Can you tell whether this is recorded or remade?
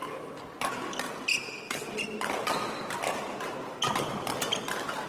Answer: recorded